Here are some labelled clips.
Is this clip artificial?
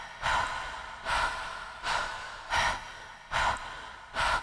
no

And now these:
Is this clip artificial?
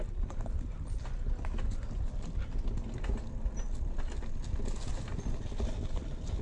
no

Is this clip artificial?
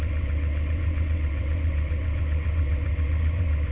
yes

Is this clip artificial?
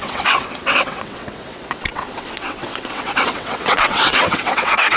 yes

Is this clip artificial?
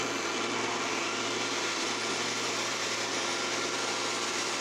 no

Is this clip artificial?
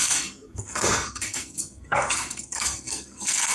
yes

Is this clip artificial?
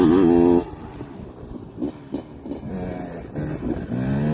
no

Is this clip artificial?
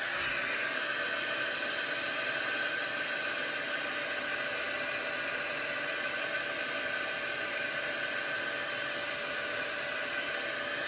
no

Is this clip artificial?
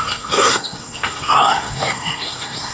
yes